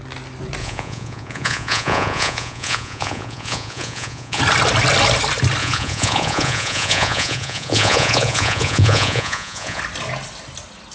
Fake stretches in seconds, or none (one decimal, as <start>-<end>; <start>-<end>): 0.6-4.4; 5.6-9.8